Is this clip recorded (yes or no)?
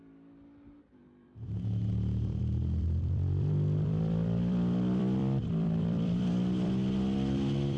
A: no